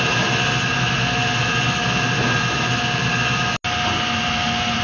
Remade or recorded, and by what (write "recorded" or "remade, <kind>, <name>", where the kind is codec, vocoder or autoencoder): recorded